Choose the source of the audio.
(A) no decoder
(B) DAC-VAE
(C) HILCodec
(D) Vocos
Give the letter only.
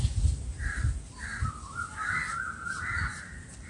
A